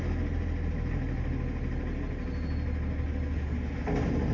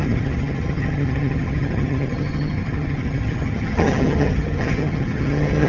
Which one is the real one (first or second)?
first